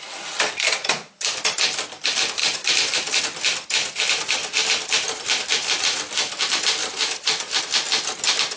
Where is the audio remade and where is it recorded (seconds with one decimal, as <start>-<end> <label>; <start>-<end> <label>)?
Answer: 0.0-2.4 recorded; 2.4-3.2 remade; 3.2-4.4 recorded; 4.4-6.0 remade; 6.0-6.8 recorded; 6.8-7.6 remade; 7.6-8.6 recorded